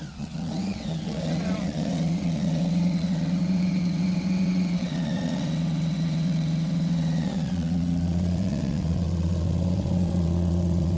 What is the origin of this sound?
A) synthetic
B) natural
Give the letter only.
A